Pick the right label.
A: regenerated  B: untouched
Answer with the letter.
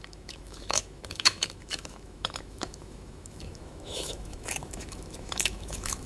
A